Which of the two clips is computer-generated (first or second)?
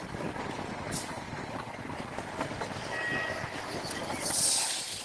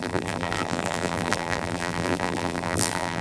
second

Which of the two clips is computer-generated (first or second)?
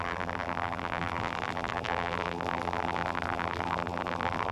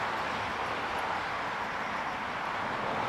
first